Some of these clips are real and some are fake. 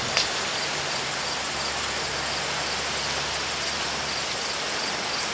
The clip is real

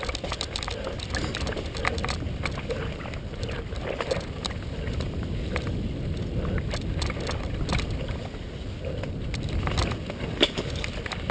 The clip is real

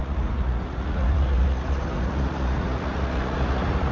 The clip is fake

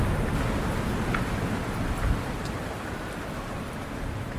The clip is real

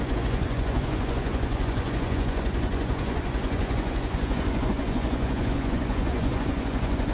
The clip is fake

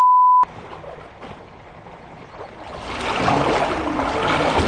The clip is real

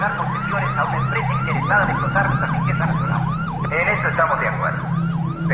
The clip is real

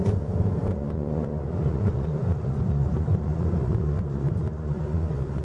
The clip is fake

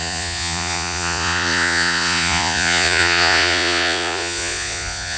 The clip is fake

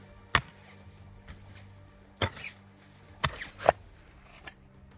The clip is real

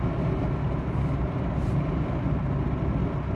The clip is real